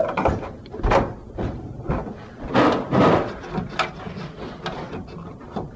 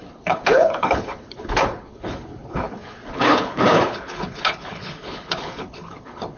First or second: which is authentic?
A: first